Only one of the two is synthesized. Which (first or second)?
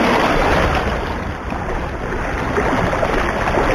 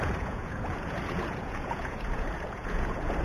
second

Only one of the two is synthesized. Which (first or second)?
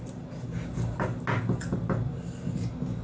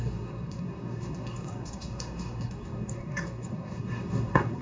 second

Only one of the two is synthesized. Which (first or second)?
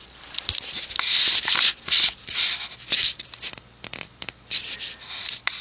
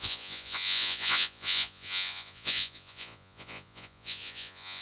second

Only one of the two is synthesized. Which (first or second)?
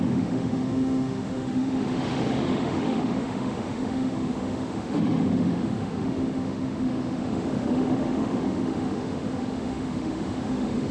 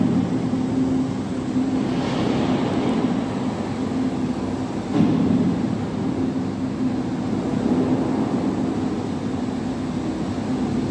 first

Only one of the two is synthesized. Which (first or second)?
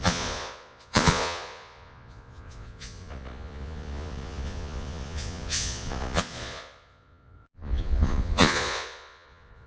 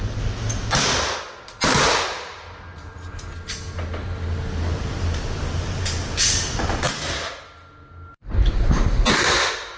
first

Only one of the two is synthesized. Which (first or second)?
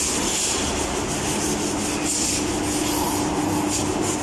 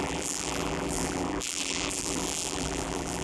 second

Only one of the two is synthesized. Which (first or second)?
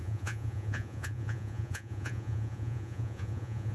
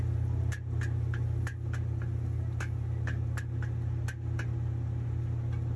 first